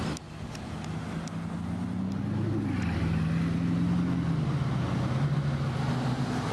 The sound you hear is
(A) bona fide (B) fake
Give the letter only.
A